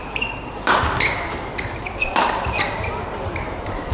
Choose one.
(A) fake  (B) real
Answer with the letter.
A